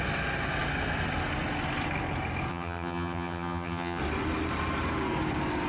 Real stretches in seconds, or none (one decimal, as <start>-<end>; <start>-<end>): 0.0-2.5; 4.0-5.7